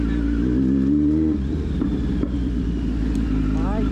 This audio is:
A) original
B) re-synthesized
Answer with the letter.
A